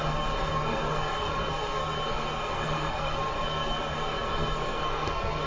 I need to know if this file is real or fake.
fake